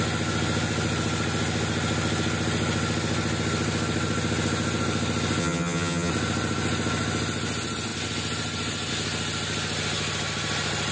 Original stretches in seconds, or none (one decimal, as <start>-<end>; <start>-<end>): 0.0-5.4; 6.1-10.9